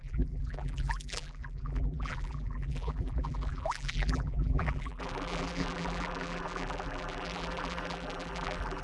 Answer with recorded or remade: remade